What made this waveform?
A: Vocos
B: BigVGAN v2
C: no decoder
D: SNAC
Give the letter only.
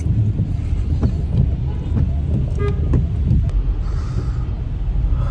C